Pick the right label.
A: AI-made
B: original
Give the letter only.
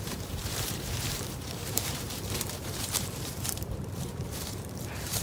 A